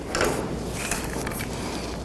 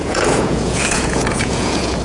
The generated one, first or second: second